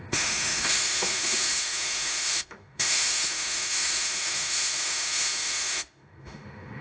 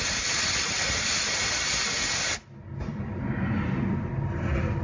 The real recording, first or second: second